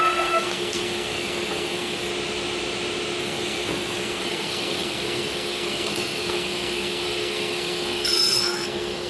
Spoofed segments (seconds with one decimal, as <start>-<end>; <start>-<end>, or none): 0.0-2.1; 3.2-9.1